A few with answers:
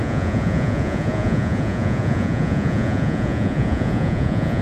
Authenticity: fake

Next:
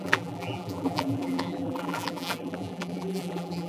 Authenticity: fake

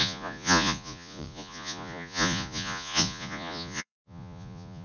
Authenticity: fake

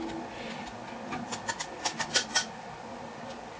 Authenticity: real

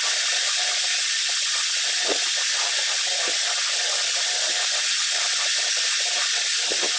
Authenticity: real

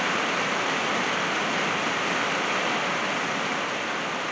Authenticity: real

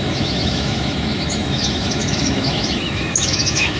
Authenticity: fake